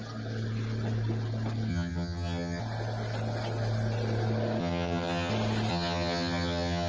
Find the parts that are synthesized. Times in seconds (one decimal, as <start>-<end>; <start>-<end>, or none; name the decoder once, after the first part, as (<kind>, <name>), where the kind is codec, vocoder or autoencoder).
1.7-2.6 (vocoder, HiFi-GAN); 4.6-5.3; 5.7-6.9